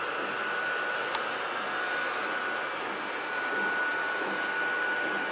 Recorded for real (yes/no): yes